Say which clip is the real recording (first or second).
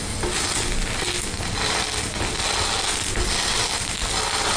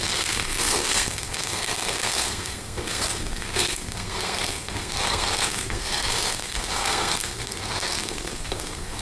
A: first